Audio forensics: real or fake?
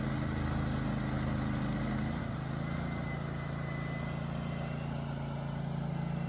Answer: real